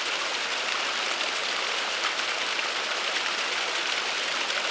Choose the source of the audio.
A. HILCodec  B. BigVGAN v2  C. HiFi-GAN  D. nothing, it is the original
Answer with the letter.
D